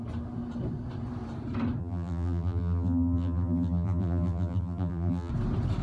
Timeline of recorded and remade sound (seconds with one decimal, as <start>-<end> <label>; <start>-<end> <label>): 0.0-1.8 recorded; 1.8-5.3 remade; 5.3-5.8 recorded